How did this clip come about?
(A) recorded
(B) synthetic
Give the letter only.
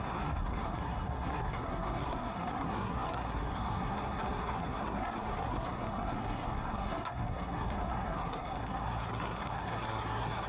B